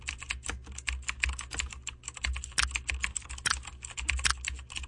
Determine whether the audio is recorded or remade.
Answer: recorded